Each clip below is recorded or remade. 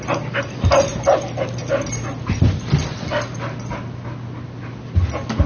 recorded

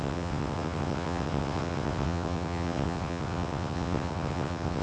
remade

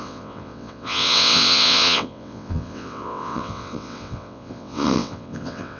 remade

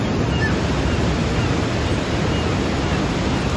recorded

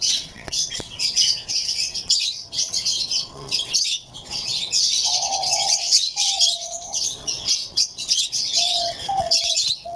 remade